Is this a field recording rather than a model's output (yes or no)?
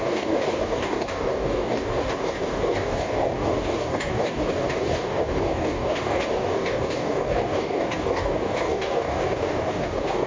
no